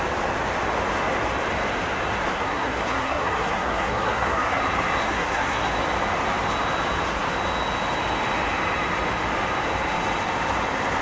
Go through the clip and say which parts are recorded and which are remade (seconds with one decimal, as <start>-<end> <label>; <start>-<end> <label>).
0.0-2.3 recorded; 2.3-4.6 remade; 4.6-5.0 recorded; 5.0-5.7 remade; 5.7-11.0 recorded